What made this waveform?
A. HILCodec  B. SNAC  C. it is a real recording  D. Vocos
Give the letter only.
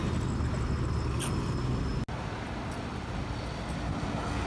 C